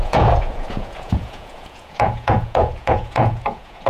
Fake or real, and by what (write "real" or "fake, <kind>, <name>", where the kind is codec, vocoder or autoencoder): fake, vocoder, Vocos